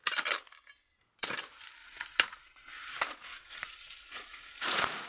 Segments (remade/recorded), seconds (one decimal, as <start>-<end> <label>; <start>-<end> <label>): 0.0-1.8 recorded; 1.8-5.1 remade